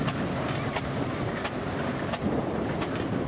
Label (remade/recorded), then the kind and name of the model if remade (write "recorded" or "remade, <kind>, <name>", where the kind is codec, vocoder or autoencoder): remade, vocoder, BigVGAN v2